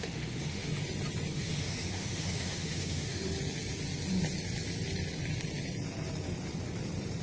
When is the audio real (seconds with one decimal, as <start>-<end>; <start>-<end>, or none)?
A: 0.7-1.3; 3.3-7.2